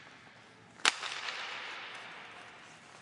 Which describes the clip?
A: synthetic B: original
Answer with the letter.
B